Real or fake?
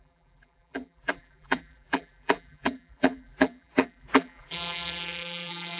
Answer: fake